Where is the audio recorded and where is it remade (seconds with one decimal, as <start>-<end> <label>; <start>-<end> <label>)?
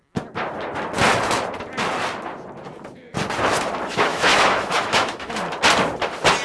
0.0-3.9 recorded; 3.9-5.3 remade; 5.3-6.4 recorded